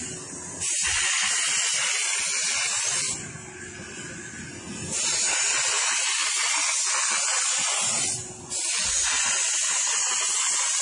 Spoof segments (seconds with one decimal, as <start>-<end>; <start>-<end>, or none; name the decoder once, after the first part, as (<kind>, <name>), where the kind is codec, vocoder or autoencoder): none